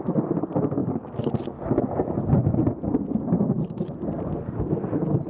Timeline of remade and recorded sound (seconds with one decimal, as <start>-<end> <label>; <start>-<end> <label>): 0.0-0.8 recorded; 0.8-1.3 remade; 1.3-5.3 recorded

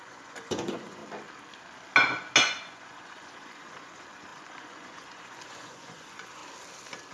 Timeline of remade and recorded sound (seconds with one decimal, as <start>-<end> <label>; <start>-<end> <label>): 0.0-1.0 remade; 1.0-2.4 recorded; 2.4-6.4 remade; 6.4-7.1 recorded

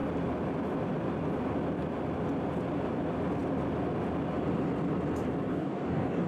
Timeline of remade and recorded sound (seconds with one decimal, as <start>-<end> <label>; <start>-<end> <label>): 0.0-5.5 recorded; 5.5-6.3 remade

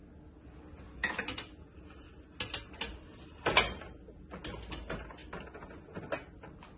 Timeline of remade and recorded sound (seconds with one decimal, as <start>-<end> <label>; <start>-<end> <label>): 0.0-6.8 recorded